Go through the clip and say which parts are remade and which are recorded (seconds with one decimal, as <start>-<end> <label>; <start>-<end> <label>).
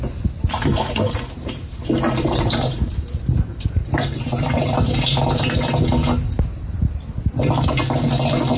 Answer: 0.0-0.7 recorded; 0.7-5.7 remade; 5.7-8.6 recorded